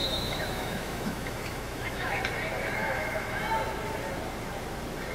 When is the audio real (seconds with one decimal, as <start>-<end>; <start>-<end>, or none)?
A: 2.2-2.8; 3.5-5.1